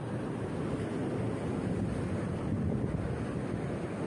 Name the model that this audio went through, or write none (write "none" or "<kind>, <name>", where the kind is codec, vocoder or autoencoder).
none